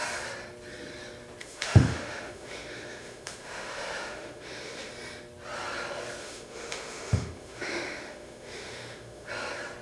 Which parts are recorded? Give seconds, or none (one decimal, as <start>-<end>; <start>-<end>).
0.0-1.4; 4.9-6.2; 9.3-9.8

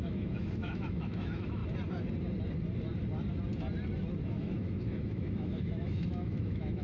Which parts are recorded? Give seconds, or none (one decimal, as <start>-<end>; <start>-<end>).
1.6-4.3

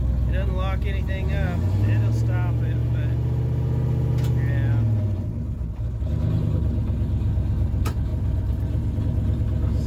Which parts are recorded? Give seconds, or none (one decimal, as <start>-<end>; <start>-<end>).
0.0-9.9

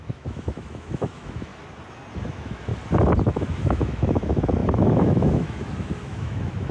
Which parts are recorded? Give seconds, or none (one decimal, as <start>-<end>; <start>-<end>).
1.5-2.2; 2.7-3.3

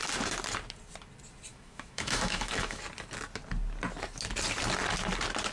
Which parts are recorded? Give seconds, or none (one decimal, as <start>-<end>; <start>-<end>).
0.0-1.5; 2.8-5.5

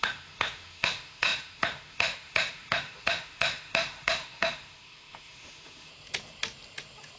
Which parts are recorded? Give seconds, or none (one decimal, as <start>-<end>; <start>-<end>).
5.9-7.2

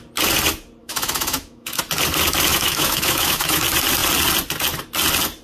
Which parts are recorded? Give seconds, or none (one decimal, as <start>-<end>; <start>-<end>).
0.0-0.8; 1.8-2.5; 3.6-5.4